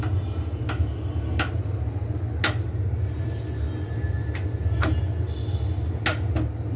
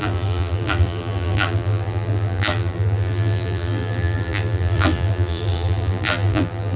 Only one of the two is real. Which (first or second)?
first